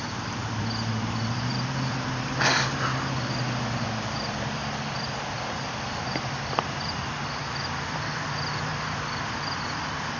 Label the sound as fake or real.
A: fake